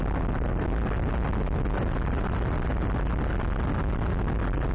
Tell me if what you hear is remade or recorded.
recorded